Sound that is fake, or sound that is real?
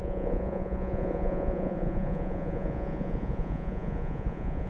fake